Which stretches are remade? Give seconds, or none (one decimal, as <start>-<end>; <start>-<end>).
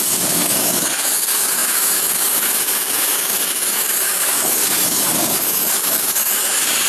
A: 0.0-6.9